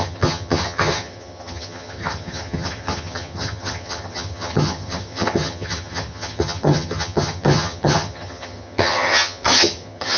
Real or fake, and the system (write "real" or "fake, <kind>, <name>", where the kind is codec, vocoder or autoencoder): fake, vocoder, HiFi-GAN